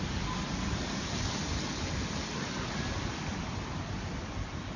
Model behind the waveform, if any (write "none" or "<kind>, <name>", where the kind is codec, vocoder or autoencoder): none